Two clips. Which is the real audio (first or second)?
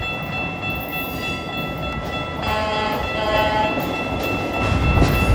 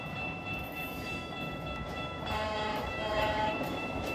first